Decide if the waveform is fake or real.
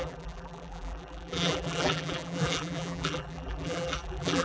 fake